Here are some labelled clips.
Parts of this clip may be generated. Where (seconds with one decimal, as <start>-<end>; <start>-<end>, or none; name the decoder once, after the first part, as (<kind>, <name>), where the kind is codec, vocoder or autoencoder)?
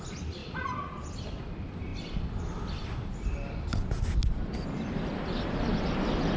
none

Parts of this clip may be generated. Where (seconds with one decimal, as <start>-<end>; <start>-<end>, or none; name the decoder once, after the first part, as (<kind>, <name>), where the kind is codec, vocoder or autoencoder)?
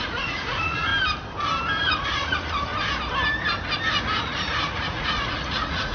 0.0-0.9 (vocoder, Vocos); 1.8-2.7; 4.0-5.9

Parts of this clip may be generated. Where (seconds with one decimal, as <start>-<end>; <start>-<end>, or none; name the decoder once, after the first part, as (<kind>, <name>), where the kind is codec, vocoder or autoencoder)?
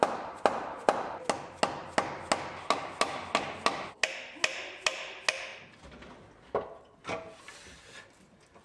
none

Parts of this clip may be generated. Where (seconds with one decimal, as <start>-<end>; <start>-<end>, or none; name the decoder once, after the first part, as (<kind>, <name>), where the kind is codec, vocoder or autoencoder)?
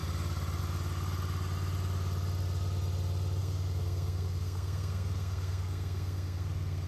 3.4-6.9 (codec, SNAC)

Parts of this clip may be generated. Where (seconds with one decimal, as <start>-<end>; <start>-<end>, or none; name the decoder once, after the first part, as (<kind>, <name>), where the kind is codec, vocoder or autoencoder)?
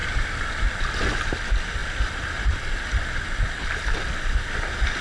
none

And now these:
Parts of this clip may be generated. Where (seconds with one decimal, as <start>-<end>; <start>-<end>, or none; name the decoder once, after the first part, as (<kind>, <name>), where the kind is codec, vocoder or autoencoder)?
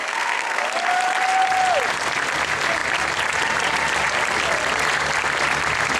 0.0-0.6 (codec, SNAC)